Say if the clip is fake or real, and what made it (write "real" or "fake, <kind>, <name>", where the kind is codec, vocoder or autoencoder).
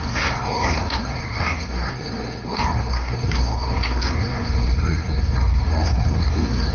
fake, codec, SNAC